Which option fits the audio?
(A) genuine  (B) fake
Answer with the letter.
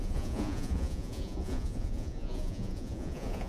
B